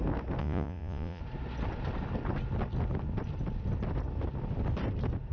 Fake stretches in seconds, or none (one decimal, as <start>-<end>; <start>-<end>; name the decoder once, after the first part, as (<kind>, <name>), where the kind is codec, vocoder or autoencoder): 0.4-1.2 (vocoder, Vocos)